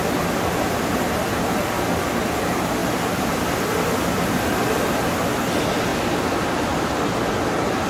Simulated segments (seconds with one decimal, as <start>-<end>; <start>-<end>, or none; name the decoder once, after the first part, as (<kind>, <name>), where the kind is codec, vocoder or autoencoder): 2.8-3.4 (vocoder, BigVGAN v2); 5.9-7.0

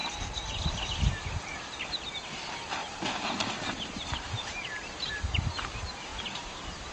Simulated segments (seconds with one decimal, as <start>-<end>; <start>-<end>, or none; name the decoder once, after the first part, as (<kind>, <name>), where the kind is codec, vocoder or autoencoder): 0.0-1.9 (vocoder, BigVGAN v2); 2.8-5.1; 6.1-6.9

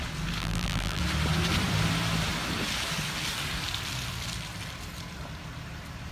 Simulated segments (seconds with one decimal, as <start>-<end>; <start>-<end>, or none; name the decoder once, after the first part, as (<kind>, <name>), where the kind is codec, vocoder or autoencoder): 0.4-1.0 (vocoder, BigVGAN v2)

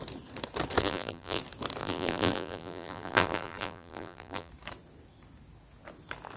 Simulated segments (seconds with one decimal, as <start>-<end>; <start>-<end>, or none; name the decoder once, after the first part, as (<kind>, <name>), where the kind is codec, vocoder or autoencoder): 0.8-1.4 (vocoder, BigVGAN v2); 1.8-4.5

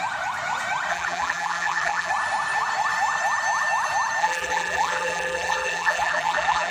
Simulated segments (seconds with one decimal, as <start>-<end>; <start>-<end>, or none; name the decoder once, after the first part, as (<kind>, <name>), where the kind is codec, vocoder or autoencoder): 0.9-2.1 (vocoder, BigVGAN v2); 4.2-6.7